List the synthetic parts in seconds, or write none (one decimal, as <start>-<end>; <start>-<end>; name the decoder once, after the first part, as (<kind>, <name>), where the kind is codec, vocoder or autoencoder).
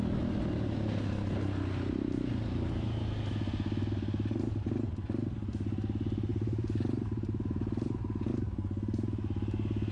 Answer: 6.3-8.3 (vocoder, BigVGAN v2)